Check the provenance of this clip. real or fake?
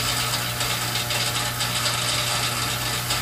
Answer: real